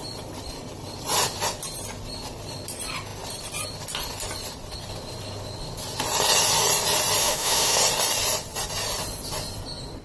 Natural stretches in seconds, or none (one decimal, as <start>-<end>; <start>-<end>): 0.0-7.2; 7.8-10.0